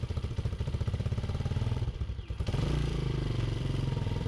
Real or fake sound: fake